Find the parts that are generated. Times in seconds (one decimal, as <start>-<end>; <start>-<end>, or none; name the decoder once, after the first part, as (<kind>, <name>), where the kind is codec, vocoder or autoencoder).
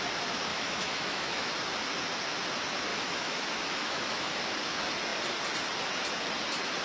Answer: 0.5-1.5 (autoencoder, DAC-VAE); 2.9-4.4